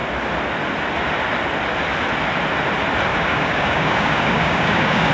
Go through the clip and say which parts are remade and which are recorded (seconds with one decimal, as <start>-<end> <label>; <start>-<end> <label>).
0.0-3.1 recorded; 3.1-5.1 remade